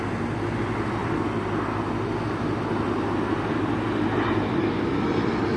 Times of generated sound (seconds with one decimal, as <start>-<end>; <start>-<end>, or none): none